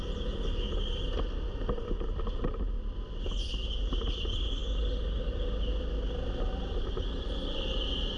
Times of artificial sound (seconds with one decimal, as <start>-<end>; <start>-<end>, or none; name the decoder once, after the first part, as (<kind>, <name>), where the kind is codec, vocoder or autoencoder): none